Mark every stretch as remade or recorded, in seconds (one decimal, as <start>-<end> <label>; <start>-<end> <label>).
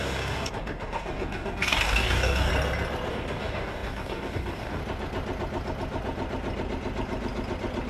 0.0-2.5 remade; 2.5-3.1 recorded; 3.1-4.8 remade; 4.8-7.9 recorded